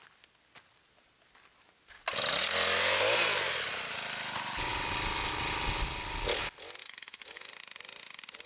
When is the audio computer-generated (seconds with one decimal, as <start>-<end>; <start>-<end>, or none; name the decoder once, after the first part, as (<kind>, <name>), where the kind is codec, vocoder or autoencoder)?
6.8-7.5 (autoencoder, DAC-VAE)